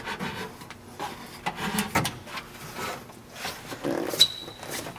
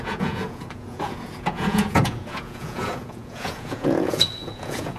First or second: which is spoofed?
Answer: second